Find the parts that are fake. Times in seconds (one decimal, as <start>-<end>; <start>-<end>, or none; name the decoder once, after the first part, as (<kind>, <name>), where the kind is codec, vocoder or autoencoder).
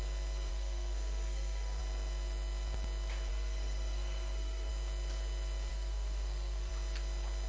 0.5-1.8 (codec, SNAC); 3.3-4.7; 5.7-6.7